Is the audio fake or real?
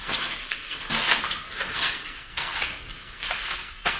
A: fake